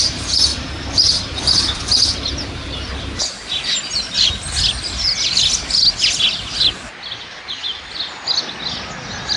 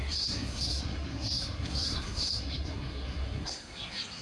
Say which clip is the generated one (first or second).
second